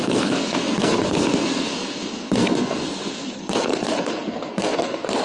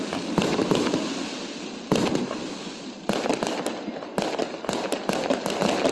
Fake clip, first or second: first